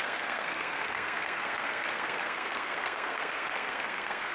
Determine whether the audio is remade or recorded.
remade